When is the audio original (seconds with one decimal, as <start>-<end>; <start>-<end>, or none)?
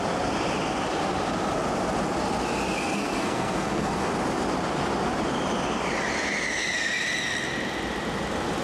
0.0-2.8; 4.1-8.6